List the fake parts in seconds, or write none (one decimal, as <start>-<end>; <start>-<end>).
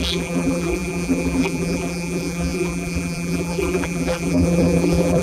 0.0-5.2